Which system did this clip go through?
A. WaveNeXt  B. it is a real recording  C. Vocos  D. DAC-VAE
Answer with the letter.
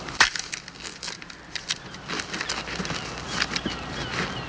B